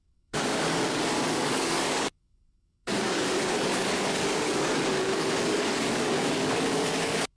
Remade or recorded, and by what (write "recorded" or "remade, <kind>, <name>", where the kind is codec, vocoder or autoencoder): remade, codec, DAC